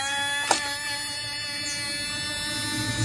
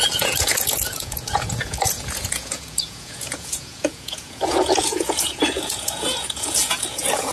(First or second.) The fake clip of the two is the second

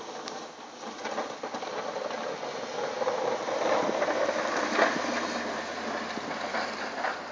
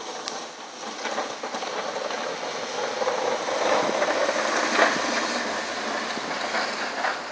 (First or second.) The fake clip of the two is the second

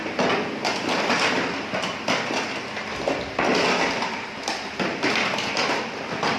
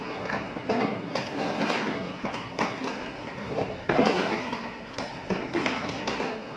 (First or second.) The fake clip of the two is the second